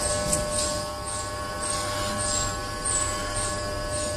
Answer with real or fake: real